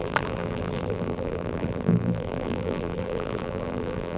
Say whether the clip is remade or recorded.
remade